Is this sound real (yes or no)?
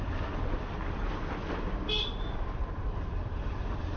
yes